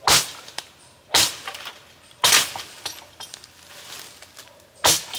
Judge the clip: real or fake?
real